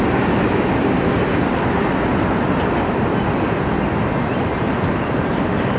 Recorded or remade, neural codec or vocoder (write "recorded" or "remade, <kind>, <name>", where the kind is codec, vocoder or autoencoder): recorded